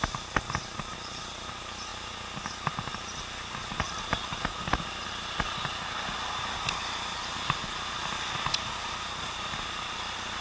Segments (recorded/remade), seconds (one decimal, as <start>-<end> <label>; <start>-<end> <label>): 0.0-10.4 recorded